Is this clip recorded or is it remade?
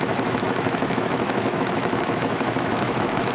remade